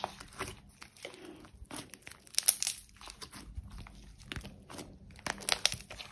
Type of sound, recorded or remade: recorded